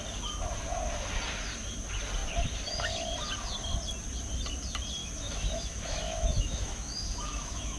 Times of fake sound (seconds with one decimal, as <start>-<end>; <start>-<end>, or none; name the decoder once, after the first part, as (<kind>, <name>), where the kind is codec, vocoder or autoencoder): 5.0-7.8 (autoencoder, DAC-VAE)